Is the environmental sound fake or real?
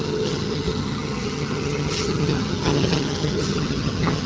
fake